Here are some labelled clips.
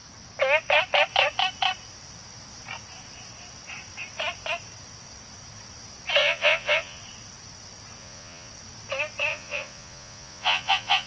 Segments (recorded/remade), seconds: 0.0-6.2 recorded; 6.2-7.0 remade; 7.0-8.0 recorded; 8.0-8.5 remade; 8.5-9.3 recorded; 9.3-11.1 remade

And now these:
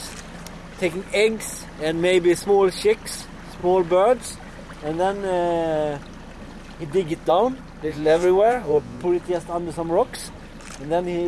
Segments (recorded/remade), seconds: 0.0-7.9 recorded; 7.9-9.0 remade; 9.0-11.3 recorded

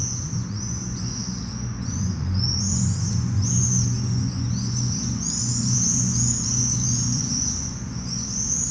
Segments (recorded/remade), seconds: 0.0-8.7 remade

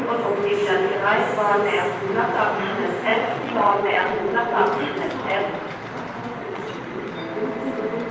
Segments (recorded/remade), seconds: 0.0-3.1 recorded; 3.1-4.2 remade; 4.2-6.4 recorded; 6.4-7.1 remade; 7.1-8.1 recorded